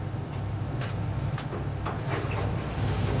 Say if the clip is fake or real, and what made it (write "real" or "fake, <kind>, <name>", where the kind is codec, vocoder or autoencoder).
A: real